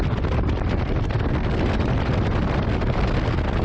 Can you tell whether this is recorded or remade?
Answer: recorded